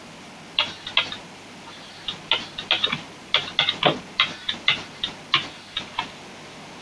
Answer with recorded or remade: recorded